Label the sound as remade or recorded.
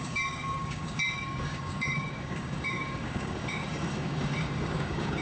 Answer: remade